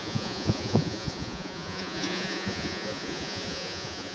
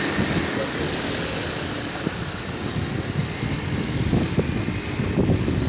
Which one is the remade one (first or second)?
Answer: first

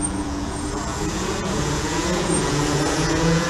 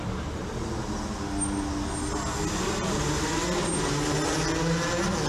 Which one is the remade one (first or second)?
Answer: first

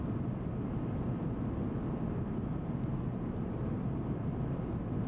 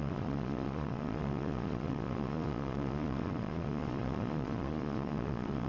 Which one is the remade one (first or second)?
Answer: second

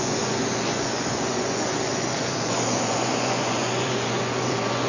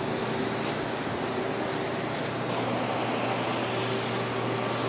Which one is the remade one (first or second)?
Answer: first